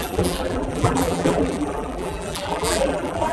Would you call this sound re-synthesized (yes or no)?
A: yes